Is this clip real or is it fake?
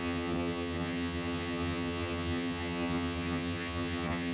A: fake